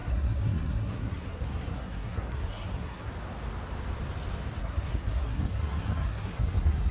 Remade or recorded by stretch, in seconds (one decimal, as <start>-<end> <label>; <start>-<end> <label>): 0.0-3.1 remade; 3.1-4.6 recorded; 4.6-6.9 remade